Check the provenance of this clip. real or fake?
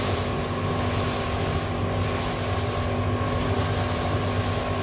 real